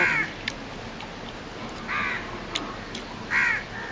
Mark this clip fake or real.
real